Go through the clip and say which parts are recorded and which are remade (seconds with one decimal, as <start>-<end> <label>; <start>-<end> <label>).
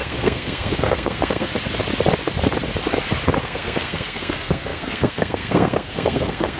0.0-1.5 remade; 1.5-3.4 recorded; 3.4-6.6 remade